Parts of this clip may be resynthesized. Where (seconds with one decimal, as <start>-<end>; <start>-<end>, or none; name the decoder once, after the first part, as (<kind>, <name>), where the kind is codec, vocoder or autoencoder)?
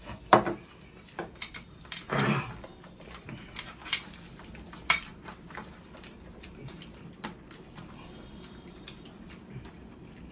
0.0-2.7 (vocoder, BigVGAN v2); 3.2-10.3